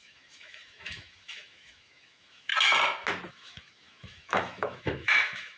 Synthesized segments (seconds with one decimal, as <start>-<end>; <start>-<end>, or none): 0.0-2.5; 3.3-5.6